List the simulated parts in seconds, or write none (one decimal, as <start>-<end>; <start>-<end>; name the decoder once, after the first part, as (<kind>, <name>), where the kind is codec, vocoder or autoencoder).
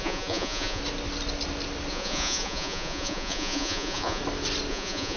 0.0-0.8 (vocoder, Vocos); 1.9-4.2; 4.7-5.2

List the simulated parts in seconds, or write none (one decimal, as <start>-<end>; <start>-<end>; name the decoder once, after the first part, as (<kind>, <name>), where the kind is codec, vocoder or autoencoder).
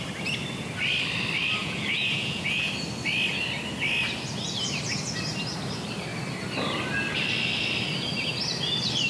1.6-2.7 (vocoder, Vocos)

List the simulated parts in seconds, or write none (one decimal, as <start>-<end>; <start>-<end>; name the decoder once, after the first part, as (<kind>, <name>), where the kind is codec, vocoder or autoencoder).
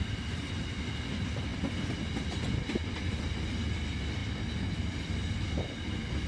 none